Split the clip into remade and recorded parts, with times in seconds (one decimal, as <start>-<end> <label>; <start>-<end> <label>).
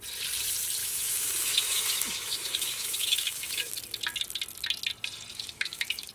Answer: 0.0-0.8 recorded; 0.8-3.7 remade; 3.7-5.3 recorded; 5.3-6.1 remade